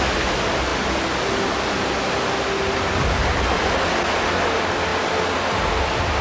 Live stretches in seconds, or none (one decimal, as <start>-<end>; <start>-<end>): 0.0-6.2